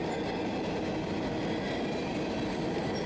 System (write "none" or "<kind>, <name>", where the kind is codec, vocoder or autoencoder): none